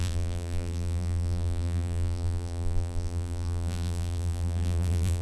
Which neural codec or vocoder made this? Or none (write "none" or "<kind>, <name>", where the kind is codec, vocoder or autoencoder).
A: vocoder, BigVGAN v2